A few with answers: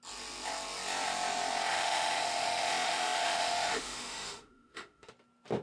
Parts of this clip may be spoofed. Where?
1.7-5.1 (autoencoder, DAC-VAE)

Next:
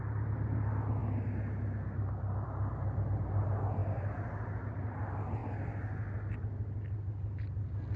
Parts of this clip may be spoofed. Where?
none

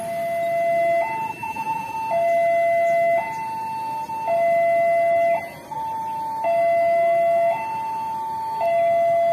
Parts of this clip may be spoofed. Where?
1.4-1.9 (vocoder, BigVGAN v2)

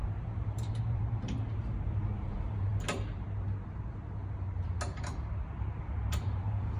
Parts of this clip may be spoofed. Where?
0.0-2.7 (vocoder, BigVGAN v2); 6.1-6.8